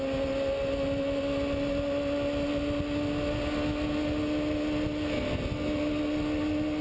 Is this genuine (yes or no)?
yes